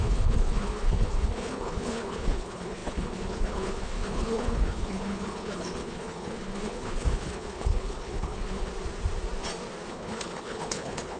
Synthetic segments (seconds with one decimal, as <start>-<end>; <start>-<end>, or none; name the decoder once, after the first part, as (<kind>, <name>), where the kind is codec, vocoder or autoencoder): 0.0-8.7 (codec, HILCodec); 9.9-11.2